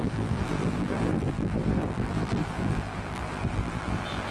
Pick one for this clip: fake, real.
fake